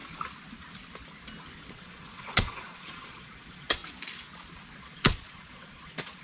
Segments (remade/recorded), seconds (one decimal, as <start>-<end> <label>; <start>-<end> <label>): 0.0-1.7 recorded; 1.7-3.8 remade; 3.8-4.8 recorded; 4.8-6.2 remade